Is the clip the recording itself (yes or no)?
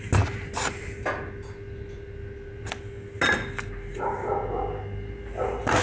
yes